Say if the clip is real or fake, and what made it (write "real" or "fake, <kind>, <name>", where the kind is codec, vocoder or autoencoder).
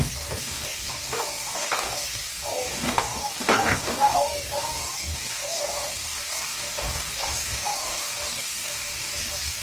fake, codec, DAC